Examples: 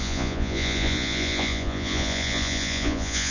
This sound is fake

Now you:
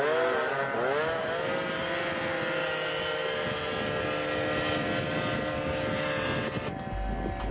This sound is real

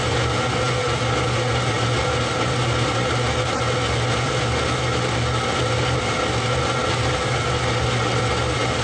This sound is real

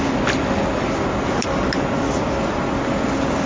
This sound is real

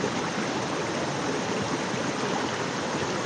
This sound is real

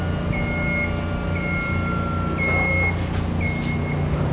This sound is real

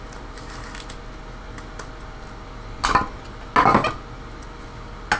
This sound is real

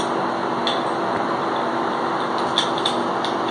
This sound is real